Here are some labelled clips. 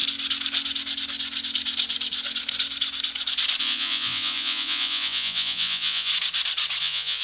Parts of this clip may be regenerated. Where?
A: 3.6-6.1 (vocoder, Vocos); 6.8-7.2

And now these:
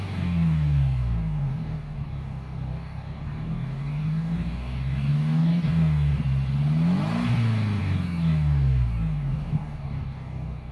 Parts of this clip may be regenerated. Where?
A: 0.0-6.1 (codec, DAC); 7.8-10.7

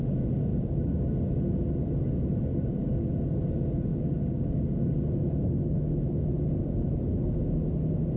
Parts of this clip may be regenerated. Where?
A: 0.5-1.1 (codec, DAC); 2.5-3.1; 3.9-4.9

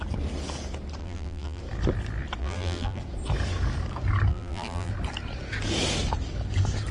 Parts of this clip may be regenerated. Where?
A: 1.0-1.6 (vocoder, BigVGAN v2); 2.4-3.0; 4.3-4.9